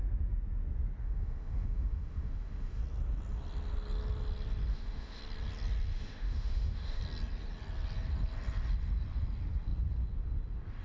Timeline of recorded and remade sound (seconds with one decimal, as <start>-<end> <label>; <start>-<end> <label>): 0.0-1.0 recorded; 1.0-2.8 remade; 2.8-4.7 recorded; 4.7-5.2 remade; 5.2-5.9 recorded; 5.9-7.0 remade; 7.0-10.8 recorded